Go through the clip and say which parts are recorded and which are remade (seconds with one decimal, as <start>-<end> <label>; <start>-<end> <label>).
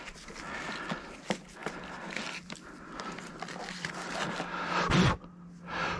0.0-6.0 recorded